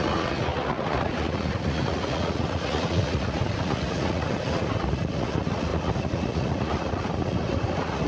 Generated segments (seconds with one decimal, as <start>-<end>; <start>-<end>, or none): 0.0-8.1